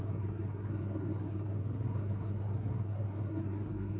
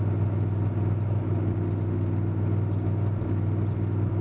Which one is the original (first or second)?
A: second